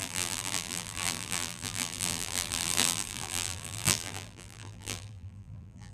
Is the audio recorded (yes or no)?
no